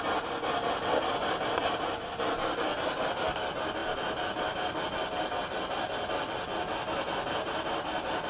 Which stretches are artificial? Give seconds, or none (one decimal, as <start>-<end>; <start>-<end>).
none